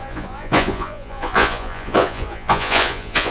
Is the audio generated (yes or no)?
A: yes